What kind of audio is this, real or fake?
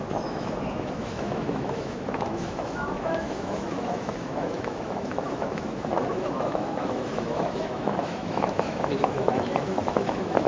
fake